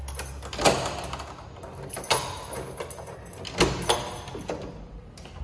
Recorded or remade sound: recorded